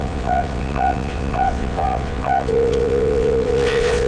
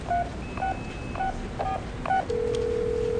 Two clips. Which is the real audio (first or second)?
second